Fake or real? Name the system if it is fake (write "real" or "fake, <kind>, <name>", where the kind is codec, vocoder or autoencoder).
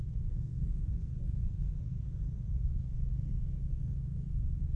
fake, codec, SNAC